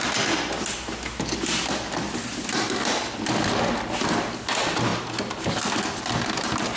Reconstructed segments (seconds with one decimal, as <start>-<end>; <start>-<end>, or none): none